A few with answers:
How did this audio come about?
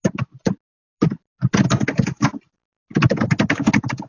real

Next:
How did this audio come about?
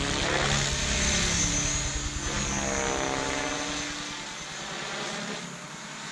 real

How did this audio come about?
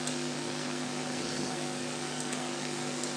fake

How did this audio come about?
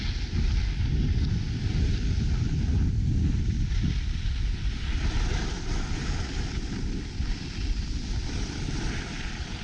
real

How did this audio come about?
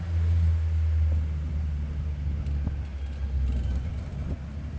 real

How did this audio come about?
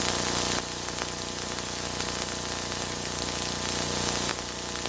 real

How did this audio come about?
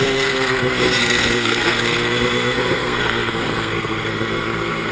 fake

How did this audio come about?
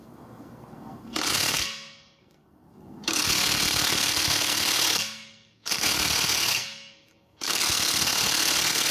fake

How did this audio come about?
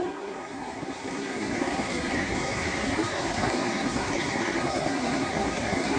fake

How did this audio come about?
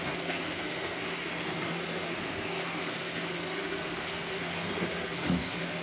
fake